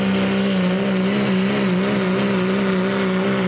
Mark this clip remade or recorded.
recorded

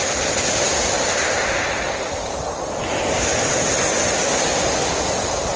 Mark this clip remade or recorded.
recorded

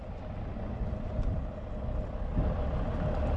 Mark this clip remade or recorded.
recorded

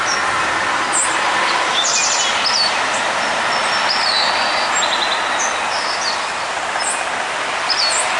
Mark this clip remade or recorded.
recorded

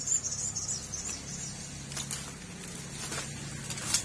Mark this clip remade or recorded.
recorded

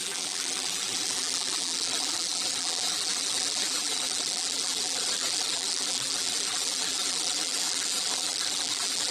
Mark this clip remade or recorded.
remade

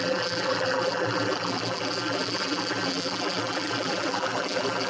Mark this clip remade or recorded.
remade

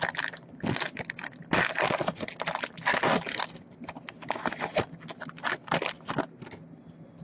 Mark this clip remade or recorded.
recorded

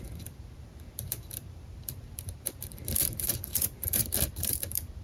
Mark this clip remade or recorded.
remade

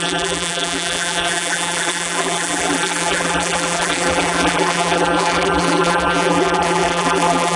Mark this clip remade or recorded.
remade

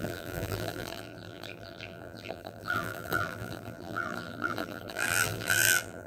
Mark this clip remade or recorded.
remade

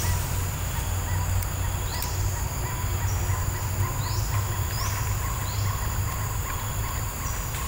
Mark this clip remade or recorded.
recorded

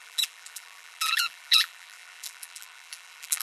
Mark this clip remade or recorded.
remade